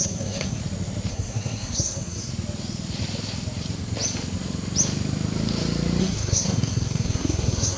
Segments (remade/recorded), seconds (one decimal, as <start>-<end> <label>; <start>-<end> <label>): 0.0-0.6 remade; 0.6-1.1 recorded; 1.1-2.3 remade; 2.3-6.0 recorded; 6.0-7.8 remade